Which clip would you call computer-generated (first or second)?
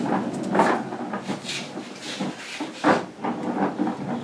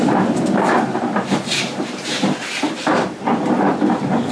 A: second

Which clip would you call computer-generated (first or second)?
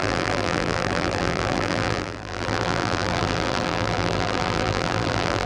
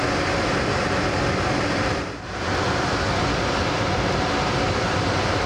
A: first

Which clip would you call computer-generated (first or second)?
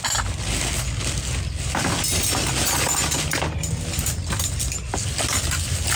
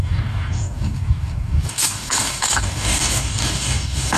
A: second